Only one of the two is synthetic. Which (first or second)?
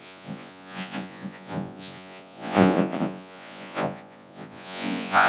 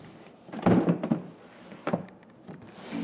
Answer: first